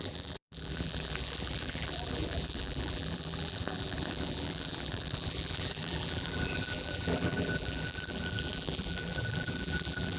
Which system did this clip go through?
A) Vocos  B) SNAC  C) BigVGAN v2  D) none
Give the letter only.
C